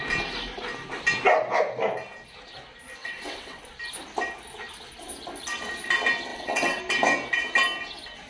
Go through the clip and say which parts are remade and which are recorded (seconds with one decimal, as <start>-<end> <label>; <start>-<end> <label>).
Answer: 0.0-3.0 recorded; 3.0-3.6 remade; 3.6-6.3 recorded; 6.3-6.8 remade; 6.8-8.3 recorded